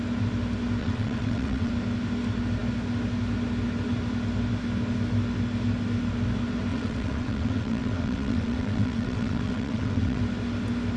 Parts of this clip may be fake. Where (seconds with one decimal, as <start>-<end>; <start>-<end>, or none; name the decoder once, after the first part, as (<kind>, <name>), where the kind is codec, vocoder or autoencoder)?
0.8-1.7 (vocoder, WaveNeXt); 6.7-10.2